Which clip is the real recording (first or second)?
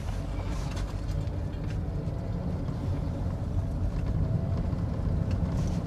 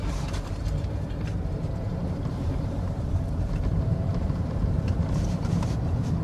first